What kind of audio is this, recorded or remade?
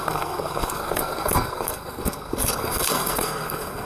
remade